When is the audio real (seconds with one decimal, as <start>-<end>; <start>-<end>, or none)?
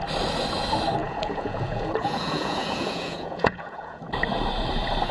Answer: 0.0-1.0; 4.0-5.1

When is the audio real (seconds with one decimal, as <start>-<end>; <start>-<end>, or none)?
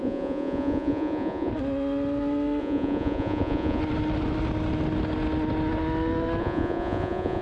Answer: 1.5-2.6; 3.8-6.4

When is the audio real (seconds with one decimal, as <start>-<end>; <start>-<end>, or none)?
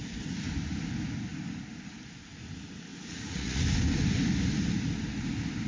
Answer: 0.0-2.9; 3.6-5.7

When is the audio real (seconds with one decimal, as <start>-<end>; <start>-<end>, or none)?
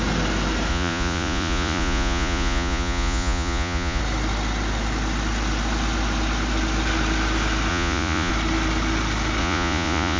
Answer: 0.0-0.7; 4.0-7.7; 8.3-9.4